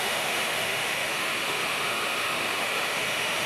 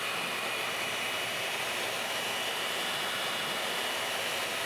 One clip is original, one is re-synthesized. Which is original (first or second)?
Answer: second